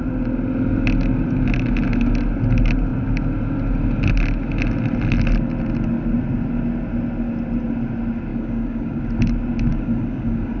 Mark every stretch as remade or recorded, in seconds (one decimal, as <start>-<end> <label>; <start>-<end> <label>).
0.0-8.3 recorded; 8.3-9.0 remade; 9.0-9.7 recorded; 9.7-10.6 remade